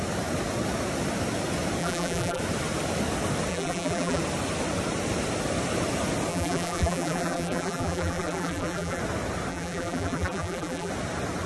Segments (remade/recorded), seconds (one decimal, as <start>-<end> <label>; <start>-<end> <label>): 0.0-1.8 recorded; 1.8-2.4 remade; 2.4-3.5 recorded; 3.5-4.2 remade; 4.2-6.3 recorded; 6.3-9.0 remade; 9.0-9.5 recorded; 9.5-10.9 remade; 10.9-11.5 recorded